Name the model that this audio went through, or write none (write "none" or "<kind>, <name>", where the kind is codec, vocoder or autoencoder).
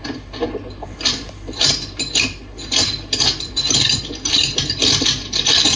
none